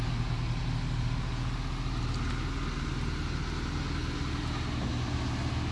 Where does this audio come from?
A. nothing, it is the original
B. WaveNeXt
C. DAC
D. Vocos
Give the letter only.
A